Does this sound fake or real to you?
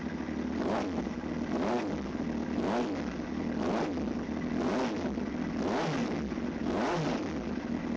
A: real